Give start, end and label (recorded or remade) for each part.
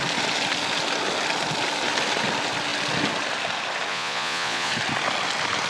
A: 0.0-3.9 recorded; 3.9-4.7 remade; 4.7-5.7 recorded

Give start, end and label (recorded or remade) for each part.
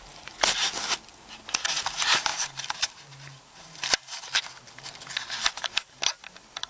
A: 0.0-6.7 recorded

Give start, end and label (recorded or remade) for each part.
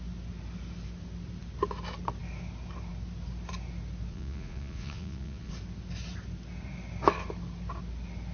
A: 0.0-4.1 recorded; 4.1-5.5 remade; 5.5-8.3 recorded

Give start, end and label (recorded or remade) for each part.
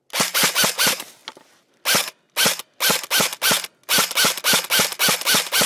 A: 0.0-5.7 recorded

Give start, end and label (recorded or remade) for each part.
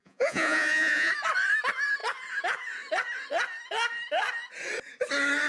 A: 0.0-1.1 remade; 1.1-5.5 recorded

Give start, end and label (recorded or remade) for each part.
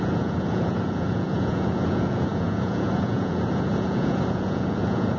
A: 0.0-5.2 remade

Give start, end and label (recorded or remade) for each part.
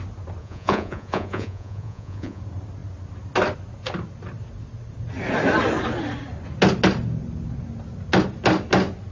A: 0.0-0.4 recorded; 0.4-2.4 remade; 2.4-9.1 recorded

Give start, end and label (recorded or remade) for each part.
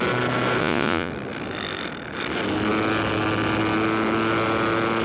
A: 0.0-0.6 recorded; 0.6-1.1 remade; 1.1-5.0 recorded